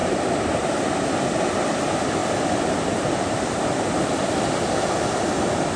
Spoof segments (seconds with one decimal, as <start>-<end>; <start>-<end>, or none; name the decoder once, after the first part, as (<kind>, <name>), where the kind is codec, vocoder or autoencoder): 0.0-1.5 (vocoder, BigVGAN v2); 2.2-4.9